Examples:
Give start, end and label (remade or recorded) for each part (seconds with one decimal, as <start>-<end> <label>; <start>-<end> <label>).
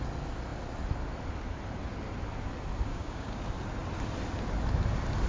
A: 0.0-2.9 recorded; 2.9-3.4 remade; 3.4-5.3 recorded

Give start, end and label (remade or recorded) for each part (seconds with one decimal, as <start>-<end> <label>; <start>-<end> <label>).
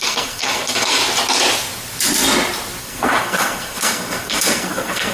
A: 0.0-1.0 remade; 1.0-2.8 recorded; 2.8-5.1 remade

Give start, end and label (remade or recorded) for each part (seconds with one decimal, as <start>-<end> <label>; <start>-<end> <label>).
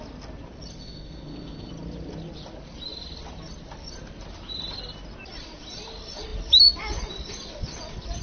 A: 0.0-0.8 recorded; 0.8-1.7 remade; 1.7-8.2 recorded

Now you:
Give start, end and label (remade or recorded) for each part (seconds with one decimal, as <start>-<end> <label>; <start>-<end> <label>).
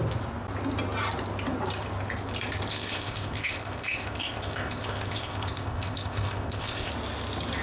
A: 0.0-2.7 recorded; 2.7-6.9 remade; 6.9-7.6 recorded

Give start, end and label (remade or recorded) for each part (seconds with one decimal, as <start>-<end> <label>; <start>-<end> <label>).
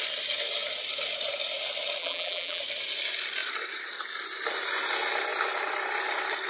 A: 0.0-2.0 recorded; 2.0-2.6 remade; 2.6-6.5 recorded